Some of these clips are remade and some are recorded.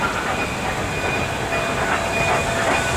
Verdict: recorded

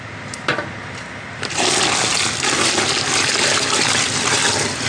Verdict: recorded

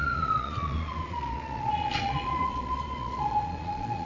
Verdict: remade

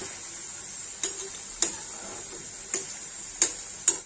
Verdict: recorded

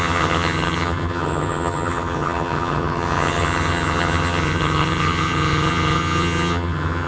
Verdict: remade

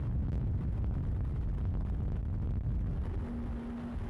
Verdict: recorded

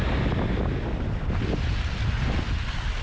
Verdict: recorded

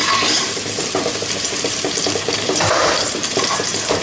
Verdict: remade